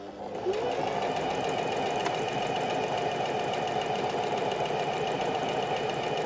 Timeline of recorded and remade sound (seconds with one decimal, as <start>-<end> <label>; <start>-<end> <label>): 0.0-2.0 recorded; 2.0-5.8 remade; 5.8-6.3 recorded